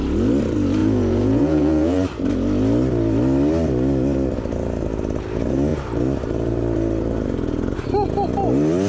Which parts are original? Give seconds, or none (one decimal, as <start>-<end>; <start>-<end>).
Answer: 0.0-0.8; 2.0-8.9